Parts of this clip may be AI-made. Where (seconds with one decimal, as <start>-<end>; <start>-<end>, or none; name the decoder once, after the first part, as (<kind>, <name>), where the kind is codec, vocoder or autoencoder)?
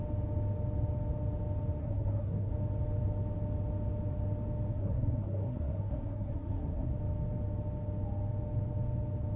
1.8-2.5 (codec, SNAC); 4.7-6.9